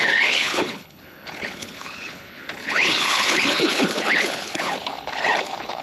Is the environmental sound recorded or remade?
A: remade